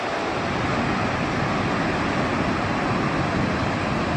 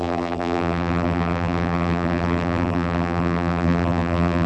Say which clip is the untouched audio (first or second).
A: first